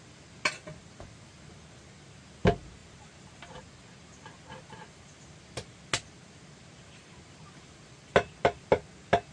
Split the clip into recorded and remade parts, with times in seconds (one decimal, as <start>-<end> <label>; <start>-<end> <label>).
0.0-9.3 recorded